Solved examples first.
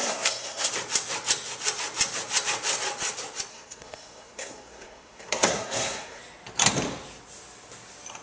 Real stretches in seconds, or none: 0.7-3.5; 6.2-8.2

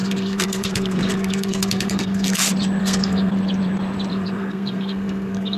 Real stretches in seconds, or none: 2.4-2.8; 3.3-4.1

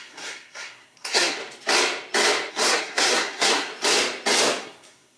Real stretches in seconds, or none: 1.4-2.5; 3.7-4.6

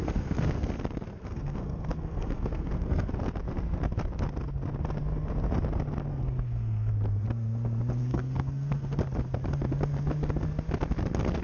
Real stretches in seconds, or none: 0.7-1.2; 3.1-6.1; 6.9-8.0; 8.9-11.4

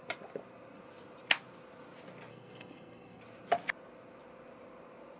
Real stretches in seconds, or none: 0.0-2.3; 3.2-5.2

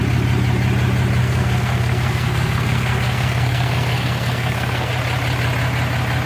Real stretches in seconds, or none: 0.0-1.2; 4.9-6.3